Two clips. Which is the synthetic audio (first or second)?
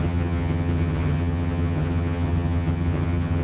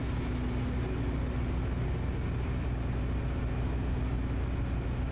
first